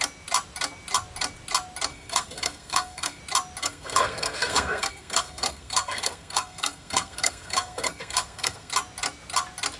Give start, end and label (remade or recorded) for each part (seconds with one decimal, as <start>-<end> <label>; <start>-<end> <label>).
0.0-1.9 recorded; 1.9-3.2 remade; 3.2-3.6 recorded; 3.6-8.7 remade; 8.7-9.8 recorded